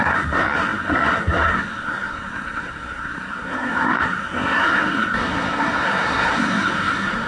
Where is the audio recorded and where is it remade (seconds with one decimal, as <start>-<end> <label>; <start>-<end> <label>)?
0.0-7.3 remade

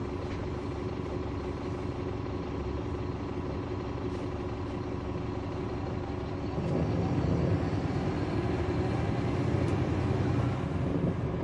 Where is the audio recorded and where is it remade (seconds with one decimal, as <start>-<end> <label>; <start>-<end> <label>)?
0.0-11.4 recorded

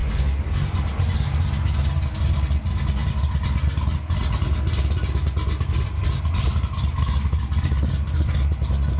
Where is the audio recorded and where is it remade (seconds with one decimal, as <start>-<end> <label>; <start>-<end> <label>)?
0.0-9.0 recorded

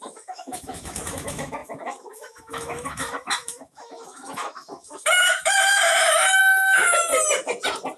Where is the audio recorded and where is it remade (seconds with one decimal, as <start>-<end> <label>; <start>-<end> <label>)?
0.0-7.1 remade; 7.1-8.0 recorded

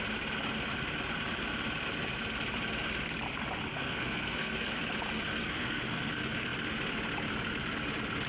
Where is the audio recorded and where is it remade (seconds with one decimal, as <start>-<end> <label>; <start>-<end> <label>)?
0.0-3.7 recorded; 3.7-4.8 remade; 4.8-5.4 recorded; 5.4-6.1 remade; 6.1-8.3 recorded

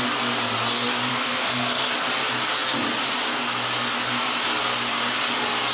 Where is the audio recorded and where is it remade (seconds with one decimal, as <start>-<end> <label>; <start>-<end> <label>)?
0.0-1.1 recorded; 1.1-1.9 remade; 1.9-5.7 recorded